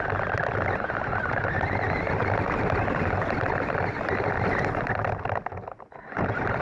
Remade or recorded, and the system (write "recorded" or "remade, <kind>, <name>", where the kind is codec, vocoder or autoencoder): recorded